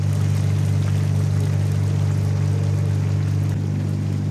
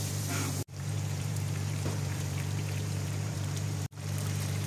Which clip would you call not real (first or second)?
second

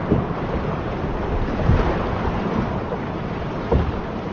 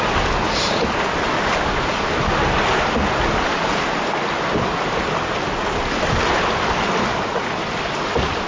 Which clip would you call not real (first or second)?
first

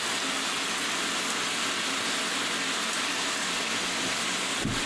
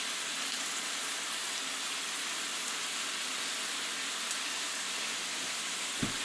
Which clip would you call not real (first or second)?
second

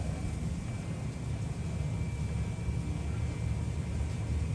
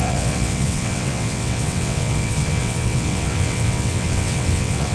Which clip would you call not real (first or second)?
second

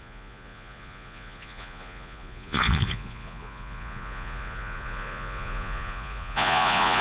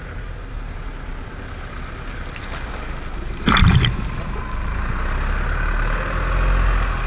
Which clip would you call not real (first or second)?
first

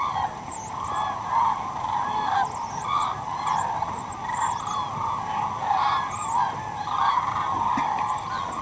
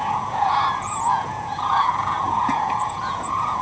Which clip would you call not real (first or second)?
second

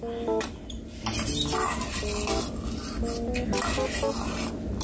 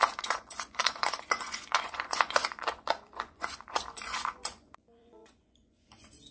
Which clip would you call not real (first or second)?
second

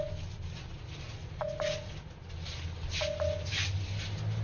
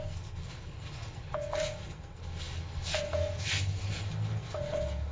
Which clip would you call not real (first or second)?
second